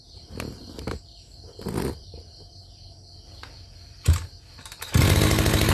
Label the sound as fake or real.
real